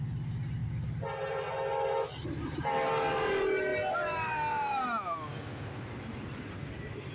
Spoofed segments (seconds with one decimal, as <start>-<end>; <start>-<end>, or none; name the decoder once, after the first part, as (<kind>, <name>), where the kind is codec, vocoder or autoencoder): none